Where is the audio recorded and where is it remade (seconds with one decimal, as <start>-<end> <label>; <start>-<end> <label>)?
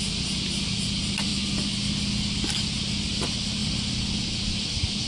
0.0-5.1 recorded